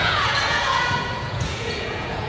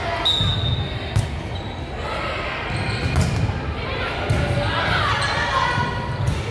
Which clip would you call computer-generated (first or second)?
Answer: first